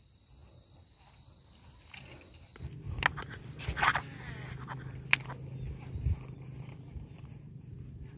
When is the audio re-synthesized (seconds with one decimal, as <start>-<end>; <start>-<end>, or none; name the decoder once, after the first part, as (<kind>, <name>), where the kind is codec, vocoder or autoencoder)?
none